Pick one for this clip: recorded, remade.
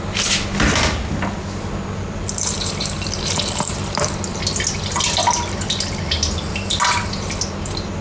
recorded